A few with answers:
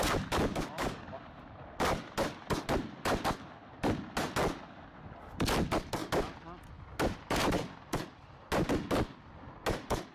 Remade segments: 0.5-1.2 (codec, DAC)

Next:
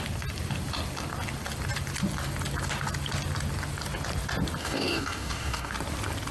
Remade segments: 4.6-5.7 (codec, DAC)

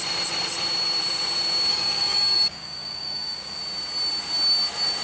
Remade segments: 1.7-3.6 (codec, DAC)

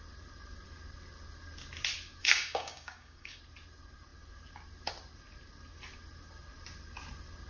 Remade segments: 2.2-3.4 (codec, DAC)